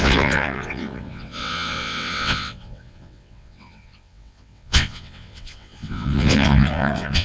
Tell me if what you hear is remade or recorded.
remade